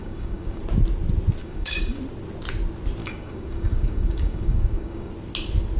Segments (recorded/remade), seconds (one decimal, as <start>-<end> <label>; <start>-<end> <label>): 0.0-0.6 remade; 0.6-1.4 recorded; 1.4-2.0 remade; 2.0-3.0 recorded; 3.0-5.1 remade; 5.1-5.8 recorded